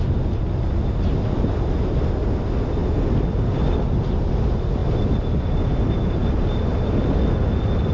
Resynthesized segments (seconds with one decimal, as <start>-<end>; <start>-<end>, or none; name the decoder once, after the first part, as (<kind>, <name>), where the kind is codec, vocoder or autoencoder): none